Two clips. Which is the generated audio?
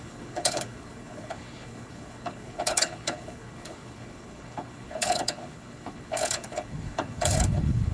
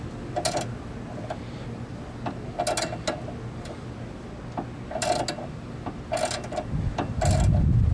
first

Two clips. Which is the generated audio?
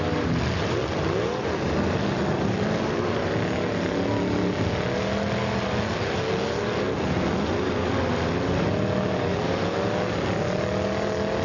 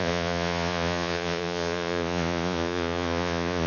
second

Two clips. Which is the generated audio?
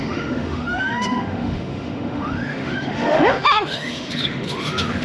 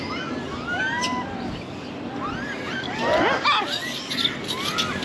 first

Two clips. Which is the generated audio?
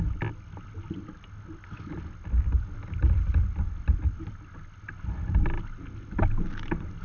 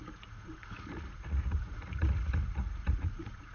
second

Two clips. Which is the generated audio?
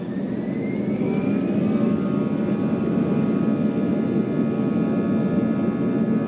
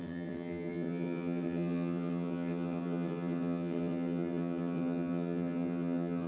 second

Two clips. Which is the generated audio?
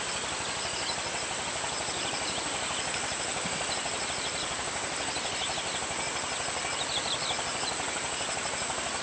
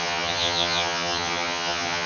second